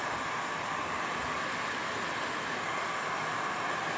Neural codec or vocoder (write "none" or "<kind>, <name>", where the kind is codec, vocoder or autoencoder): none